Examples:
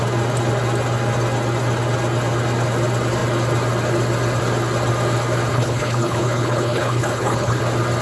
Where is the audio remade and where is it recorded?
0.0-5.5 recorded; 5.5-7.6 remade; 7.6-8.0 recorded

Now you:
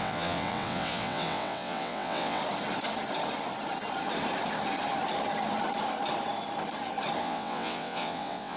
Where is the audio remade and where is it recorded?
0.0-2.4 remade; 2.4-7.2 recorded; 7.2-8.6 remade

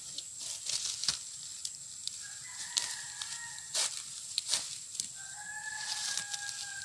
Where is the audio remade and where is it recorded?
0.0-6.8 recorded